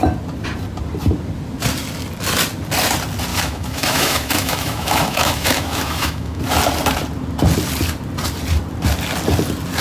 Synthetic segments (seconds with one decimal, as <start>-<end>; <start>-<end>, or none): 3.3-6.4